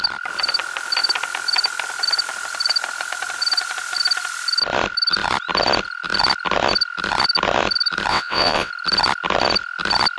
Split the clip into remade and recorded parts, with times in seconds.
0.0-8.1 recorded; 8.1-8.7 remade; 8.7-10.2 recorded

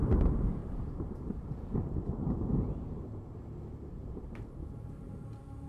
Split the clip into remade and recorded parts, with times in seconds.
0.0-0.6 recorded; 0.6-3.4 remade; 3.4-4.0 recorded; 4.0-5.1 remade; 5.1-5.7 recorded